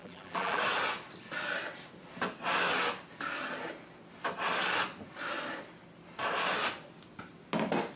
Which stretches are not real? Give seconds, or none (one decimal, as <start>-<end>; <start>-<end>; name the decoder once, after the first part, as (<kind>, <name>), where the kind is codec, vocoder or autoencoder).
0.0-0.6 (vocoder, BigVGAN v2)